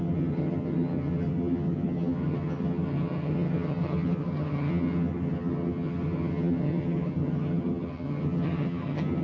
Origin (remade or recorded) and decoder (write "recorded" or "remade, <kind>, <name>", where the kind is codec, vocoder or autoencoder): remade, vocoder, HiFi-GAN